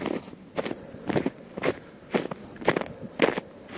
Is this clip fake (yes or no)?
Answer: no